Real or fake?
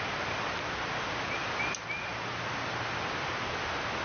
real